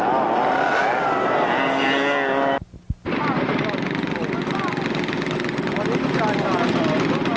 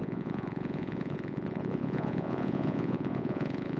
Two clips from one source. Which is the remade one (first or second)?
second